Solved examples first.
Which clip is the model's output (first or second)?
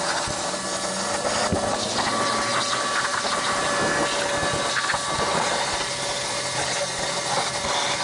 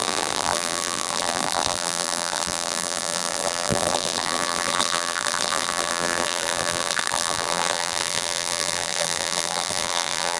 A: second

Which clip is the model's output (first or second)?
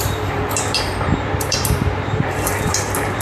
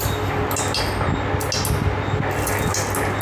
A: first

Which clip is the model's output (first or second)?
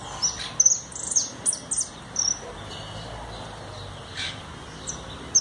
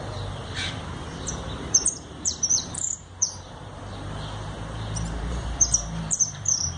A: second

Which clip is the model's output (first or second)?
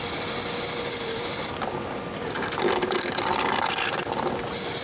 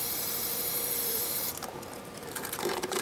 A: second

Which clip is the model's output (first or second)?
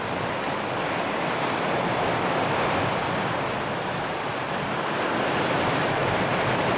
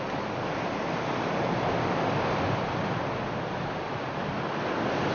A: first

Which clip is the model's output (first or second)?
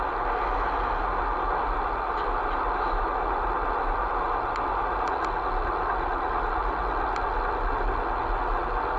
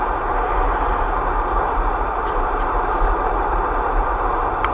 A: second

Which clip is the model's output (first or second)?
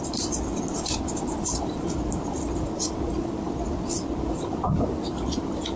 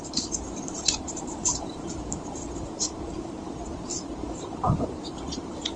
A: second